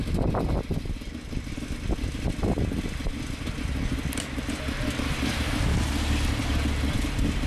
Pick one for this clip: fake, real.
real